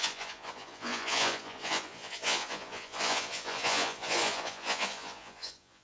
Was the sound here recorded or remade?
remade